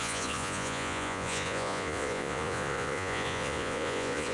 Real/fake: fake